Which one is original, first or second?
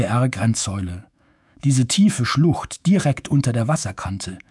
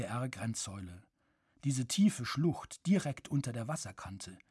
second